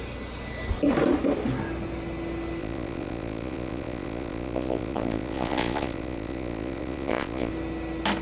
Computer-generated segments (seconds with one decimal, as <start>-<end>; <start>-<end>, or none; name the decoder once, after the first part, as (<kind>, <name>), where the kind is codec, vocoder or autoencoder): 2.6-7.5 (vocoder, Vocos)